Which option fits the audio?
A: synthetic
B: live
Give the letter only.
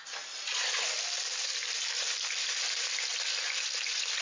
B